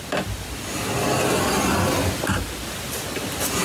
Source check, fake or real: real